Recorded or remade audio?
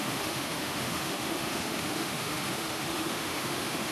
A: remade